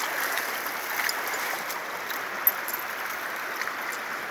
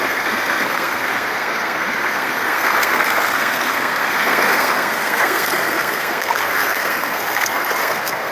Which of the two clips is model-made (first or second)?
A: second